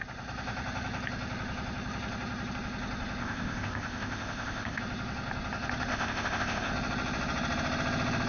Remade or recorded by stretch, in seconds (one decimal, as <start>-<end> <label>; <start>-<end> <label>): 0.0-3.2 recorded; 3.2-4.8 remade; 4.8-5.9 recorded; 5.9-6.7 remade; 6.7-8.3 recorded